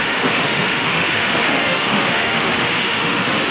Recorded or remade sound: remade